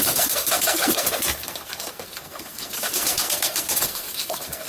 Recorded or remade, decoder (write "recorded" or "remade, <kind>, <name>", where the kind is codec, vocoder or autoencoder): remade, codec, SNAC